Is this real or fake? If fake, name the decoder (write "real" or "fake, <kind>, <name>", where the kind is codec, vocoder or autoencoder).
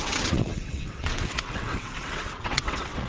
fake, vocoder, WaveNeXt